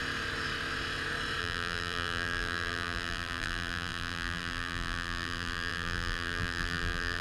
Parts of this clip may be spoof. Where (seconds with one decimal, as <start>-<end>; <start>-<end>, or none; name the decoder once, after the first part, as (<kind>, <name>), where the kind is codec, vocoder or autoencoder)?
1.4-7.2 (vocoder, BigVGAN v2)